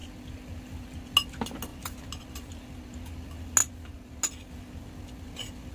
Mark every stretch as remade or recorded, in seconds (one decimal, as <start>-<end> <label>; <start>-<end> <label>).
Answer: 0.0-5.7 recorded